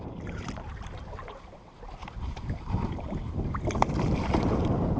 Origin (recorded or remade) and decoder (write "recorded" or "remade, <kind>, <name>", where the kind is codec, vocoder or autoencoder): remade, vocoder, BigVGAN v2